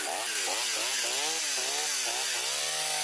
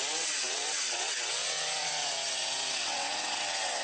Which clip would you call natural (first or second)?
first